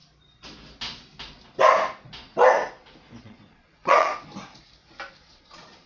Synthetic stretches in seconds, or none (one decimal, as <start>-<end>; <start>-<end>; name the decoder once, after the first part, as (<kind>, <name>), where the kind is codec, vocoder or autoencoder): 3.2-4.1 (vocoder, Vocos); 5.1-5.9